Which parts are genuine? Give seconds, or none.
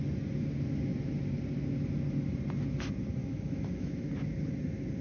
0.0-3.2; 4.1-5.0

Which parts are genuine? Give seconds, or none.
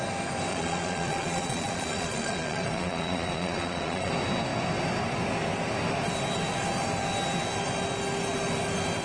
0.0-0.5; 4.1-9.0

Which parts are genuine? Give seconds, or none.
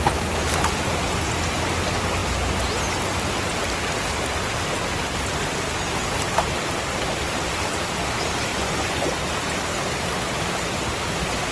0.0-8.5; 9.1-11.5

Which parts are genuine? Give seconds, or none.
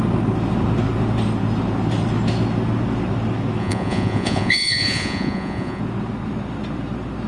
0.0-3.6; 5.8-7.3